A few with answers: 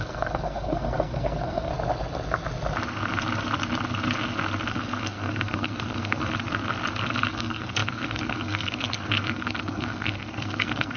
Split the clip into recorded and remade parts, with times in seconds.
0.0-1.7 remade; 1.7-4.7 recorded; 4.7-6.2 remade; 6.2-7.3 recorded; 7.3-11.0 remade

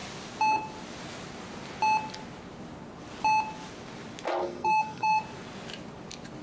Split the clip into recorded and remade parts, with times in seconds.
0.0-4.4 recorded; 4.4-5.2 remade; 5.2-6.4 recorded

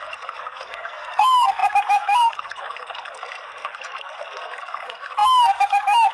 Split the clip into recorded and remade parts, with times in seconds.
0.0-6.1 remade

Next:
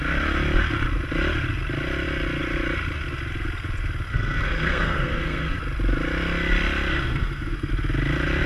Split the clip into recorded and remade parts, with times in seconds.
0.0-4.1 recorded; 4.1-5.6 remade; 5.6-6.9 recorded; 6.9-7.7 remade; 7.7-8.5 recorded

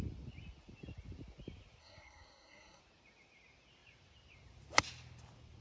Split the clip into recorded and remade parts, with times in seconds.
0.0-1.8 recorded; 1.8-2.8 remade; 2.8-5.6 recorded

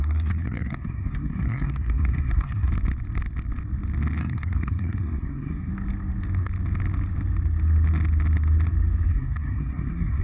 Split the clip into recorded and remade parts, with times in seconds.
0.0-2.7 remade; 2.7-4.2 recorded; 4.2-5.7 remade; 5.7-9.1 recorded; 9.1-10.2 remade

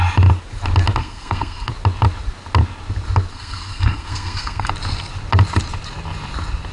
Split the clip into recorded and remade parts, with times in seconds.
0.0-1.0 recorded; 1.0-1.7 remade; 1.7-3.3 recorded; 3.3-4.7 remade; 4.7-6.7 recorded

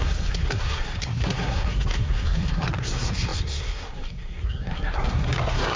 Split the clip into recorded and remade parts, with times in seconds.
0.0-5.8 remade